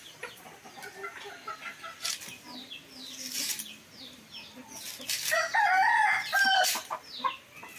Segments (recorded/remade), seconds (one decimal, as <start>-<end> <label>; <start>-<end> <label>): 0.0-7.8 recorded